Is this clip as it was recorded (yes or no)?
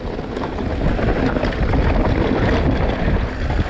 yes